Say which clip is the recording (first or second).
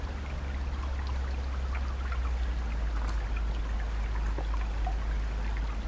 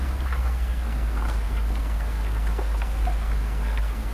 first